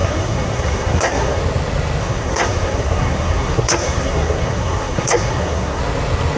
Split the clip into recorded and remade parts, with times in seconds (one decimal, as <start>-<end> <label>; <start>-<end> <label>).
0.0-1.4 remade; 1.4-2.0 recorded; 2.0-5.8 remade; 5.8-6.4 recorded